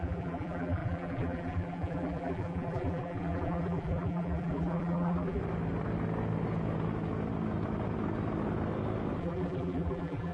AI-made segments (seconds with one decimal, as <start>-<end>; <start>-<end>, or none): 0.0-5.4; 9.2-10.3